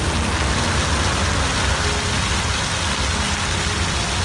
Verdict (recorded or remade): recorded